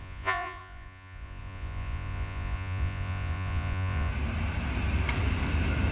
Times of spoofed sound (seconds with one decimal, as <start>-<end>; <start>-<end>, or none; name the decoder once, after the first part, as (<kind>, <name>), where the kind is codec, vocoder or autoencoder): 0.0-4.1 (vocoder, Vocos)